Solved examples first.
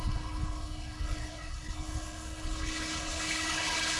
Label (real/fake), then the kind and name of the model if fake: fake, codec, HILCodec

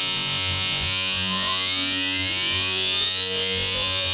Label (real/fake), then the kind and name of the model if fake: fake, vocoder, Vocos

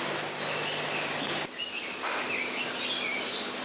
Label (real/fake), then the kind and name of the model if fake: real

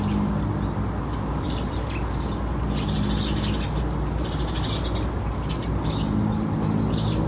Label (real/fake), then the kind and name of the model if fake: real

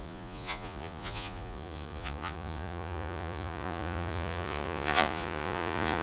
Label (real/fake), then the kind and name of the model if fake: fake, vocoder, Vocos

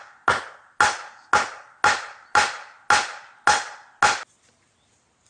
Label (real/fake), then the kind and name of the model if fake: real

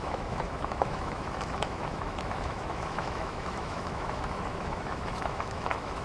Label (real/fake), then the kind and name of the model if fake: fake, autoencoder, DAC-VAE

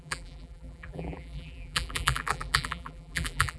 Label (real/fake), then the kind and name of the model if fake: fake, vocoder, BigVGAN v2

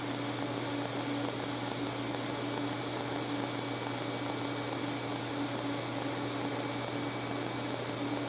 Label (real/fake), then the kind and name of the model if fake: real